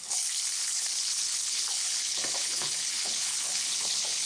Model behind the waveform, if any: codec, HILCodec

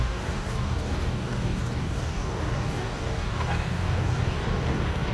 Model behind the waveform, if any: codec, DAC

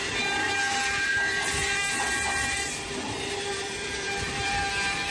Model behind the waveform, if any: vocoder, BigVGAN v2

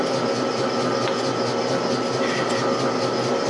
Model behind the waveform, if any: none